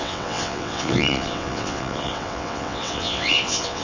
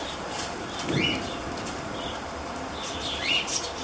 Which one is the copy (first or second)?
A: first